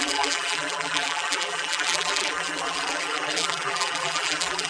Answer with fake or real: fake